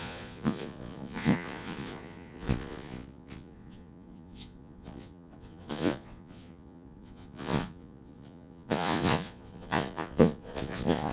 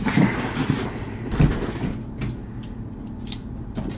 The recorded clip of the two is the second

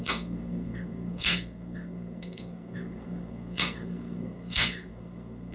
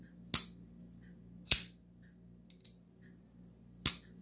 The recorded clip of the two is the second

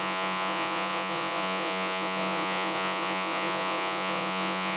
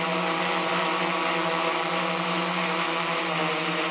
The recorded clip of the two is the second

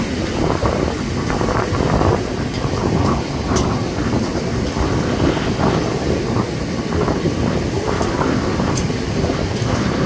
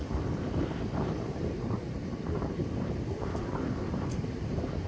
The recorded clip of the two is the first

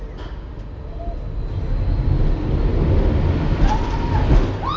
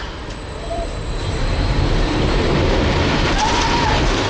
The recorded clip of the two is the first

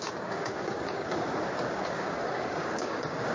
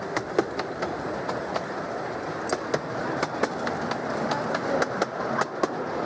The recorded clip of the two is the second